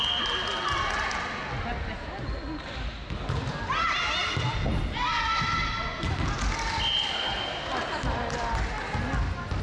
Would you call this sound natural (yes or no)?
yes